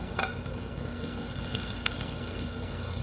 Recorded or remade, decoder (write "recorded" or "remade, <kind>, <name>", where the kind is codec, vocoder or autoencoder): remade, codec, SNAC